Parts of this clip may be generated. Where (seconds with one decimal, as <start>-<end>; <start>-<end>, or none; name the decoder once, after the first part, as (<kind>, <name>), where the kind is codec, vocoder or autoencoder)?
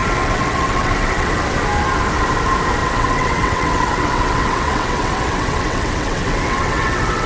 0.0-1.3 (vocoder, WaveNeXt); 2.8-7.3